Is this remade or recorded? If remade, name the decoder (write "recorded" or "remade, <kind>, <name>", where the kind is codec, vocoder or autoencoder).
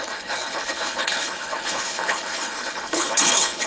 remade, codec, HILCodec